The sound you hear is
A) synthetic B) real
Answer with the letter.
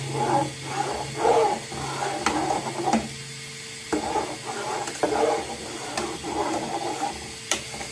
B